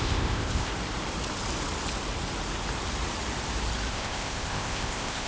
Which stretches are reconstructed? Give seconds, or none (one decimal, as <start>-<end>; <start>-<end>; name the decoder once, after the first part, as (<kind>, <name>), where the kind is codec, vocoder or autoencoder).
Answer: 0.0-0.7 (codec, ZipCodec); 3.9-5.3